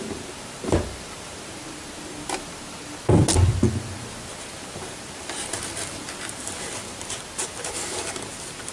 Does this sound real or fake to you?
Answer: real